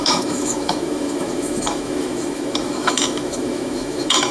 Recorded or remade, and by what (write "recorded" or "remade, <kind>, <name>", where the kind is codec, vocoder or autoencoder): remade, autoencoder, DAC-VAE